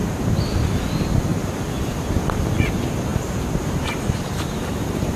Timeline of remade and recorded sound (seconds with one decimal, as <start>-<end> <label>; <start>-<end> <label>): 0.0-0.8 remade; 0.8-1.3 recorded; 1.3-2.2 remade; 2.2-3.1 recorded; 3.1-5.2 remade